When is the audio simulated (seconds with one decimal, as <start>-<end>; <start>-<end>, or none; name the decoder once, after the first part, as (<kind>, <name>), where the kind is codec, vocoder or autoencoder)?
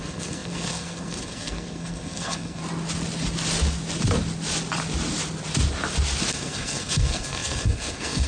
0.0-2.6 (codec, SNAC); 6.3-8.3